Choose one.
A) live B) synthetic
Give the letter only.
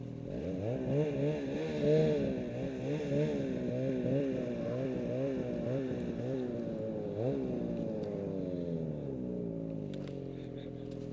A